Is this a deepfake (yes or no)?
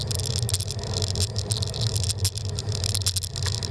no